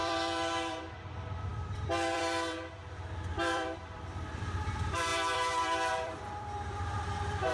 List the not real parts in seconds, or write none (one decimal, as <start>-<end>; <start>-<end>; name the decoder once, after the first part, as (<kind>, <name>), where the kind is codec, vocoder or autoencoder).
0.0-7.5 (vocoder, BigVGAN v2)